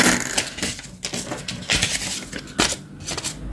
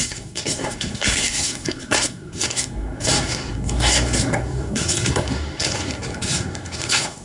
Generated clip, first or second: second